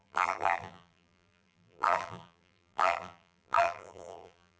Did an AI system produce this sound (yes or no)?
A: yes